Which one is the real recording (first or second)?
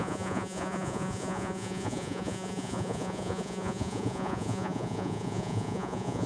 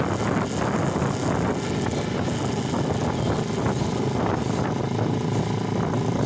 second